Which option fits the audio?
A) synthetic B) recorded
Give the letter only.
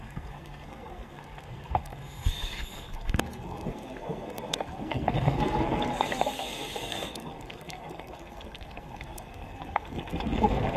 A